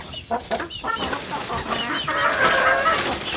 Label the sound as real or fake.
real